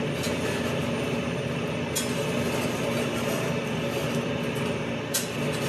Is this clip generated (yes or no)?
no